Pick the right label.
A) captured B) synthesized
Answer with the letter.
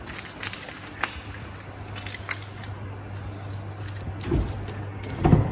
A